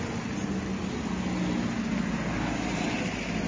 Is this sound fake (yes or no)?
no